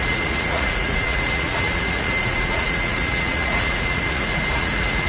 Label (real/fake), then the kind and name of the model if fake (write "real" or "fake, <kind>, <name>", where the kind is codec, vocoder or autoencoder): fake, vocoder, Vocos